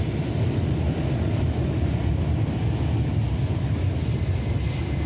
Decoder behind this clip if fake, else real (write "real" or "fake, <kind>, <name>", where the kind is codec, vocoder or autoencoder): real